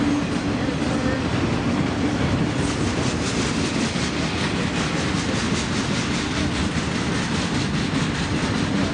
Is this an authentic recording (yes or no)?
yes